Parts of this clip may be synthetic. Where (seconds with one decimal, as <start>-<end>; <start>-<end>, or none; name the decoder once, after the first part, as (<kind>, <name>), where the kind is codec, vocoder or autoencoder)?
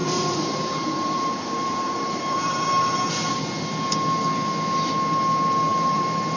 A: 0.0-3.1 (vocoder, BigVGAN v2); 5.7-6.4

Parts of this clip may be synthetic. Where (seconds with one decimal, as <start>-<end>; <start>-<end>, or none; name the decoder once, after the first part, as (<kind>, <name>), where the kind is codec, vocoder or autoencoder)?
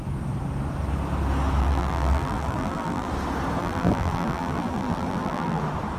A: 1.6-3.1 (vocoder, BigVGAN v2); 3.6-5.6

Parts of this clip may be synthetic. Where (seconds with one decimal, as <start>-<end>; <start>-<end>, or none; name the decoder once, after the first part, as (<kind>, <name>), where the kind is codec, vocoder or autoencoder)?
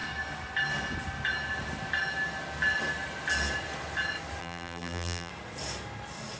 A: 4.4-5.3 (vocoder, BigVGAN v2)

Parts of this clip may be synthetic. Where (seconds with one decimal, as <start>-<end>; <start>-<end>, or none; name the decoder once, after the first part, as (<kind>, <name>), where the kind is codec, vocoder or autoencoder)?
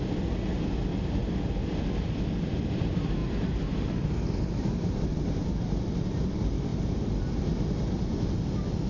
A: 3.2-5.9 (vocoder, BigVGAN v2); 6.7-7.4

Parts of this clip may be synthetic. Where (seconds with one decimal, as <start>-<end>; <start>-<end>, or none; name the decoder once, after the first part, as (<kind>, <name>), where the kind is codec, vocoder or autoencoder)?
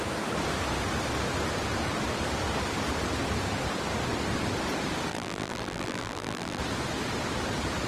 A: 5.1-6.6 (vocoder, BigVGAN v2)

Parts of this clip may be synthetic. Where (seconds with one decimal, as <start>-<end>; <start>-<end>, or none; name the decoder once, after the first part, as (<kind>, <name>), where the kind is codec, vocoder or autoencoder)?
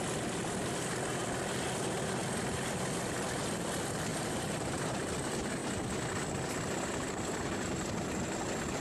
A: 4.1-4.8 (vocoder, BigVGAN v2)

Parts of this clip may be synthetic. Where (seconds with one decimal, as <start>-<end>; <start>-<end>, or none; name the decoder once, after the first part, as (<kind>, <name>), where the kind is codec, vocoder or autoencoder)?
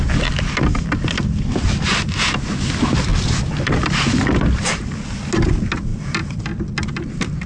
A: 3.1-3.9 (vocoder, BigVGAN v2); 5.9-6.5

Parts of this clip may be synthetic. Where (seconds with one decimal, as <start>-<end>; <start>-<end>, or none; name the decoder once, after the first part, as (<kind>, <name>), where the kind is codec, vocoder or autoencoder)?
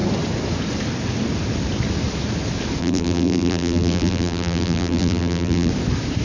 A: 2.8-5.7 (vocoder, BigVGAN v2)